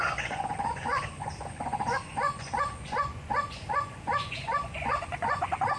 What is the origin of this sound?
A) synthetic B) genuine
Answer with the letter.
A